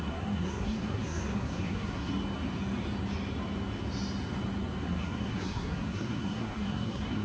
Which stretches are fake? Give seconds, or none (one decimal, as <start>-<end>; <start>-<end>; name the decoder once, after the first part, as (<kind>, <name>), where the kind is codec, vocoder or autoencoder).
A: 0.0-2.1 (codec, SNAC); 4.8-7.2